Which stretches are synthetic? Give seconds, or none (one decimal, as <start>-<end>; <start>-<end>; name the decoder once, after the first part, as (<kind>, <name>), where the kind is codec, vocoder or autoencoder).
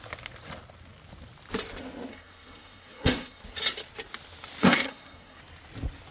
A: 2.1-3.4 (codec, SNAC); 4.6-5.4